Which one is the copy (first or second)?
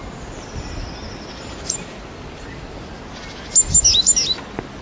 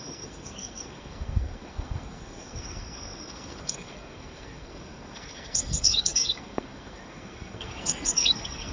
second